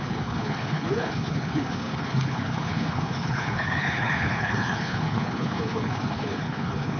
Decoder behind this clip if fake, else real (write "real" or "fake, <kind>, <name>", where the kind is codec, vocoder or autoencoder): fake, codec, HILCodec